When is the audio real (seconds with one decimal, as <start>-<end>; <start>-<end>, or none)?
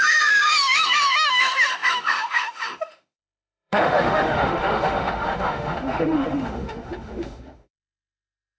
none